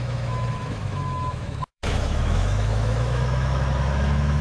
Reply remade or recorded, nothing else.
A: remade